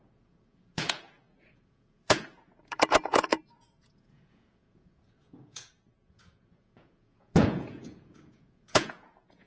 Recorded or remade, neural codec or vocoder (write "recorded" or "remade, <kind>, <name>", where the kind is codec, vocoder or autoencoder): remade, vocoder, Vocos